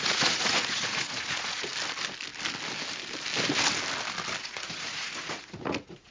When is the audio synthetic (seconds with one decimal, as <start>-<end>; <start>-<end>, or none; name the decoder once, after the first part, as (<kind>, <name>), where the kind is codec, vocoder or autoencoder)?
0.0-1.7 (vocoder, Vocos); 4.4-6.1